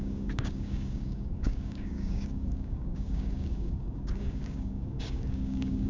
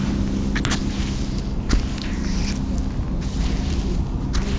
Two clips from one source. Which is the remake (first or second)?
first